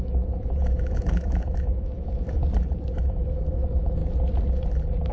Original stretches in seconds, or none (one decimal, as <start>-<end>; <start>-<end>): 2.4-3.1; 4.0-5.1